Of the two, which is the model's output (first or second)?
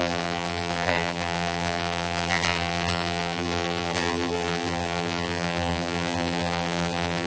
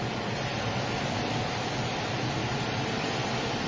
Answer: first